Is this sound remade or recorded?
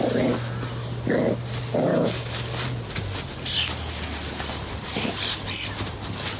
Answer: recorded